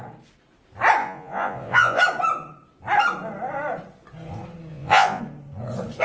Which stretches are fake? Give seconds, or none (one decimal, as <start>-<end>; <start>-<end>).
1.0-2.0; 4.7-5.2